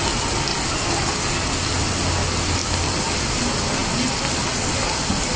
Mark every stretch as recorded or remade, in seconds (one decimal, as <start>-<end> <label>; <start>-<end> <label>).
0.0-5.4 recorded